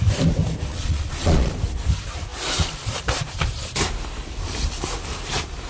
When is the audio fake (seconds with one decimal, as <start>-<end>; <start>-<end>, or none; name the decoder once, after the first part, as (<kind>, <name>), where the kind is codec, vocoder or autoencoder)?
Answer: 0.7-1.5 (vocoder, Vocos)